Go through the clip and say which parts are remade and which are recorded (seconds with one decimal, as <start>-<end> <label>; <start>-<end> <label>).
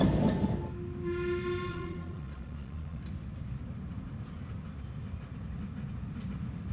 0.0-1.7 recorded; 1.7-3.0 remade; 3.0-6.7 recorded